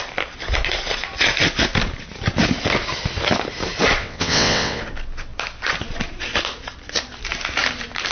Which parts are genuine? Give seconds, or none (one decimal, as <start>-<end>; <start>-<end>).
0.0-4.0; 4.8-8.1